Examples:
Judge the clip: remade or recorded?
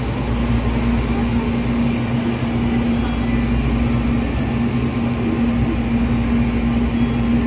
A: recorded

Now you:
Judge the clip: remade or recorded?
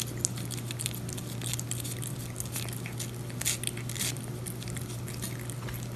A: recorded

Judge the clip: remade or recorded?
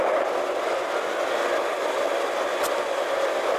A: recorded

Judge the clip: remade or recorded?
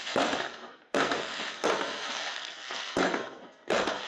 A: remade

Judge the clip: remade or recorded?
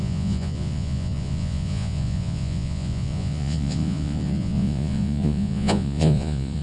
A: remade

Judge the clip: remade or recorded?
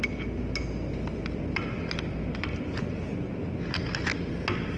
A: recorded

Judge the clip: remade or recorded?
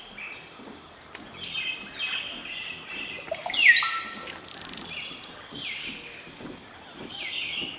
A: recorded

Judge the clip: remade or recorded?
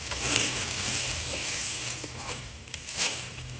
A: remade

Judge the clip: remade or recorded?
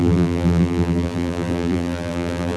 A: remade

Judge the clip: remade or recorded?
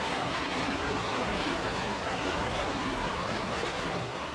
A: remade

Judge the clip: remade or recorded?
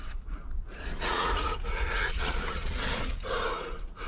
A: remade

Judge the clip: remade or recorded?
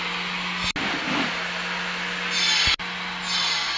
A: recorded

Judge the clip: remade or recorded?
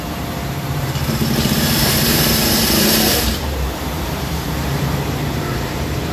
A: remade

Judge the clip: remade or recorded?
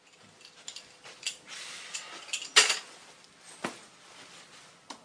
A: recorded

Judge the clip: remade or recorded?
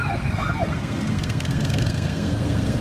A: remade